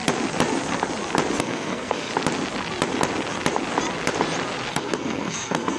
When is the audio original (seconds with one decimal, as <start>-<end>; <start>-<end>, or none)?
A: 0.0-1.4; 2.1-4.7